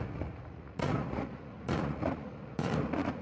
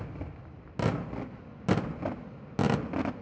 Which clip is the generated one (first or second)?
first